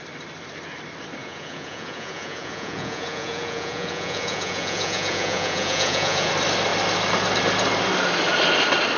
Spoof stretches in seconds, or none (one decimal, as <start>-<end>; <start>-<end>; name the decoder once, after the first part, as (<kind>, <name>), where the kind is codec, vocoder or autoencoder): 1.2-6.3 (vocoder, Vocos)